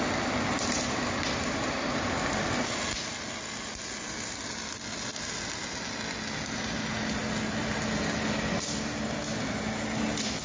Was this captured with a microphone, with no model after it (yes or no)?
yes